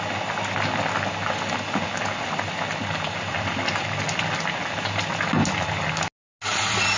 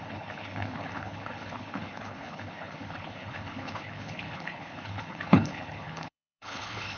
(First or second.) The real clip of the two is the first